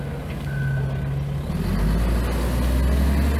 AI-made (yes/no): no